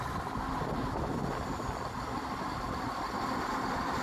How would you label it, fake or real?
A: real